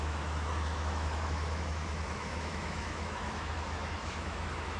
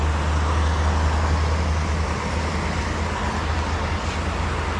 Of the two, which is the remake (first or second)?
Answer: first